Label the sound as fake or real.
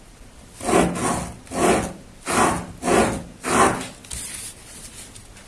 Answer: real